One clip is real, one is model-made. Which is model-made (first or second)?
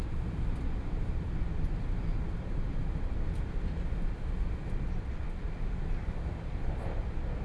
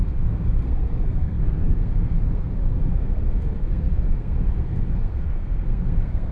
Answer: second